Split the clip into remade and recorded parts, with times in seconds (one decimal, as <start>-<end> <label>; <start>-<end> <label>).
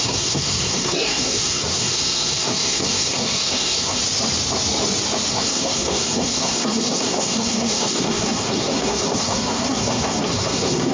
0.0-4.0 remade; 4.0-5.3 recorded; 5.3-10.9 remade